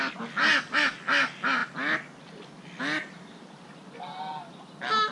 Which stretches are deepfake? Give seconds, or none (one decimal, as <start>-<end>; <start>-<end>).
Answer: none